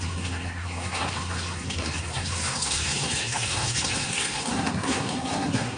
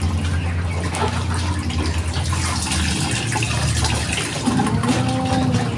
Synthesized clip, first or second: first